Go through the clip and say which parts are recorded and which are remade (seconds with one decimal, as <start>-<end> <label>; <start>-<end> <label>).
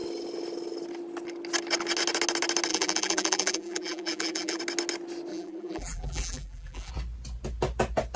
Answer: 0.0-2.7 recorded; 2.7-4.6 remade; 4.6-5.3 recorded; 5.3-6.9 remade; 6.9-8.2 recorded